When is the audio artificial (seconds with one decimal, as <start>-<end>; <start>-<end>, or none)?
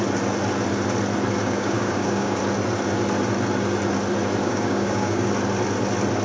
1.4-2.4; 4.4-5.3